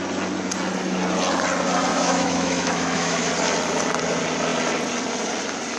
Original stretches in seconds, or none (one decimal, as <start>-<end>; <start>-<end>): 0.0-1.9; 3.3-5.8